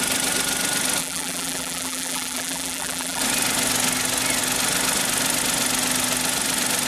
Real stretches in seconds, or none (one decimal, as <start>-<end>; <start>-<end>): 0.0-1.0; 3.2-6.9